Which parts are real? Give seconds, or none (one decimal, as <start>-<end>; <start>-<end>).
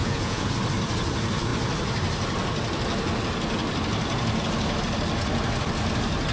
0.5-6.3